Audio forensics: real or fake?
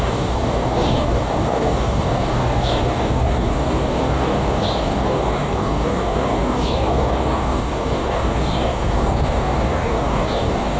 fake